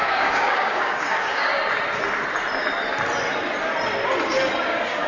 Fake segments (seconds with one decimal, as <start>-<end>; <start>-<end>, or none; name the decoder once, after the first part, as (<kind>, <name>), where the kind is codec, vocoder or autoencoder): 0.0-1.5 (codec, DAC); 4.6-5.1